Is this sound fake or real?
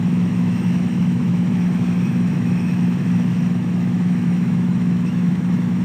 fake